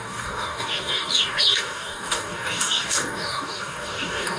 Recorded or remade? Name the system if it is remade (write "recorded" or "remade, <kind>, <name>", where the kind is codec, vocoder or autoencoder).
remade, codec, DAC